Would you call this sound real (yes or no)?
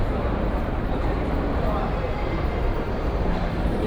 no